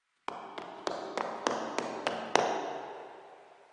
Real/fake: real